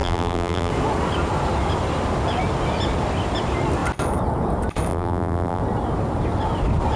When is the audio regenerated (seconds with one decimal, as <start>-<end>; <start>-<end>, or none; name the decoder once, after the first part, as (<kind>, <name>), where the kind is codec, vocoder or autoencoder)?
0.0-0.7 (vocoder, BigVGAN v2); 4.9-5.6